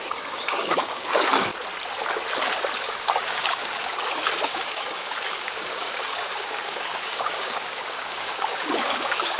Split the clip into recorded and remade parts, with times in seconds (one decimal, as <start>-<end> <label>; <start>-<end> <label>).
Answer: 0.0-1.5 remade; 1.5-2.8 recorded; 2.8-9.4 remade